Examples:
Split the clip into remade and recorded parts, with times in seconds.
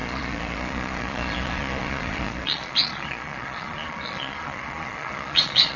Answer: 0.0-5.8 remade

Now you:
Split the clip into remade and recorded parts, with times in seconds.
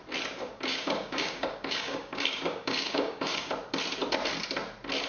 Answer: 0.0-0.4 recorded; 0.4-3.5 remade; 3.5-5.1 recorded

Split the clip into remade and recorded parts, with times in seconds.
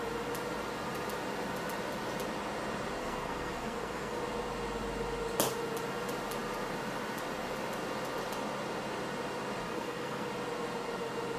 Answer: 0.0-3.0 recorded; 3.0-4.2 remade; 4.2-9.7 recorded; 9.7-10.3 remade; 10.3-11.4 recorded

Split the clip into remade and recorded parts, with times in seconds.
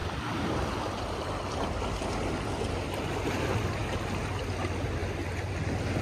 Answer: 0.0-1.7 remade; 1.7-3.8 recorded; 3.8-4.4 remade; 4.4-6.0 recorded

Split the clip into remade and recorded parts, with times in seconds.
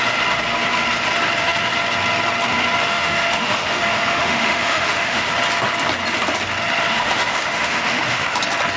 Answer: 0.0-2.9 recorded; 2.9-5.3 remade; 5.3-6.9 recorded; 6.9-8.4 remade; 8.4-8.8 recorded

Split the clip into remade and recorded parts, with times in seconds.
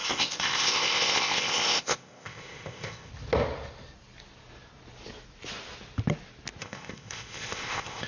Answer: 0.0-3.1 remade; 3.1-6.6 recorded; 6.6-8.1 remade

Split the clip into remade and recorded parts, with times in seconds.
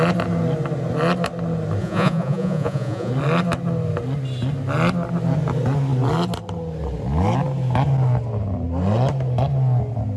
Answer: 0.0-1.8 recorded; 1.8-3.1 remade; 3.1-10.2 recorded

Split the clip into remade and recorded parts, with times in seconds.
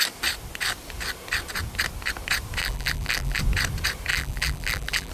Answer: 0.0-2.6 recorded; 2.6-3.4 remade; 3.4-4.1 recorded; 4.1-5.1 remade